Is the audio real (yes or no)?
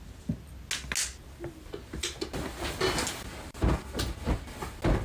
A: yes